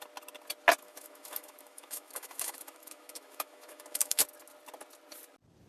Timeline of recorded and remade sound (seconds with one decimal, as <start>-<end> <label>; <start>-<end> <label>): 0.0-0.8 recorded; 0.8-4.2 remade; 4.2-5.7 recorded